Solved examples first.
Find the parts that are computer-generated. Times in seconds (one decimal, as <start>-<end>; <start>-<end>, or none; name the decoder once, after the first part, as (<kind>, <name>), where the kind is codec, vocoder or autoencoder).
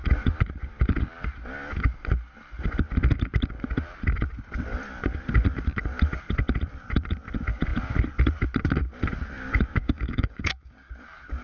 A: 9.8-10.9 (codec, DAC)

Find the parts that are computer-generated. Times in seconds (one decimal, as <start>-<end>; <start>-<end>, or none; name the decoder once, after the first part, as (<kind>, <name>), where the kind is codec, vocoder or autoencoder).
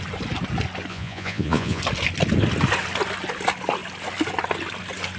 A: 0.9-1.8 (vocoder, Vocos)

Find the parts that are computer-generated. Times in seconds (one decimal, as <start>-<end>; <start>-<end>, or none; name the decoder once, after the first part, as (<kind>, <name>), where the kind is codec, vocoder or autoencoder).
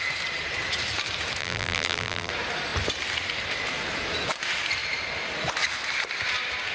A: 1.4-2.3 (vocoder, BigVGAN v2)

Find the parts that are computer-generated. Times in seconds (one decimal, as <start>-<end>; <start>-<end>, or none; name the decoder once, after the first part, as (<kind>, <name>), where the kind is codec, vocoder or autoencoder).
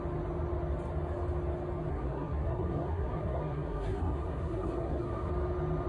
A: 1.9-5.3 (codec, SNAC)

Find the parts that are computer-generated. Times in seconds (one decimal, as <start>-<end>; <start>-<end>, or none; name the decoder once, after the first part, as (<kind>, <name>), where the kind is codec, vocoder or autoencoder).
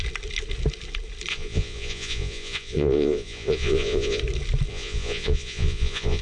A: 1.3-4.2 (vocoder, Vocos); 4.7-6.2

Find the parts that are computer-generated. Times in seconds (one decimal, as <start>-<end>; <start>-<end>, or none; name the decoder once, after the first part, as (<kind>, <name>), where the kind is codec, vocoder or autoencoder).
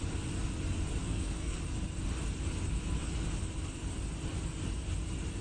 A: 1.0-1.6 (codec, SNAC)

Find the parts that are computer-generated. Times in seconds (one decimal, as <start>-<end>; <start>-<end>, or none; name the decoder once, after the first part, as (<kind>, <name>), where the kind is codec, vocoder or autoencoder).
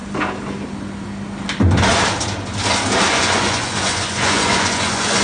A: 3.1-5.2 (vocoder, Vocos)